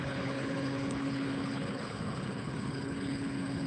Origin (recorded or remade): remade